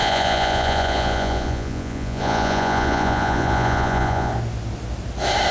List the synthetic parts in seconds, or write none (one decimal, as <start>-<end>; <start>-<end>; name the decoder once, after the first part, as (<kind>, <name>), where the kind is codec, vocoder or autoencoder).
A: 0.0-4.3 (vocoder, Vocos)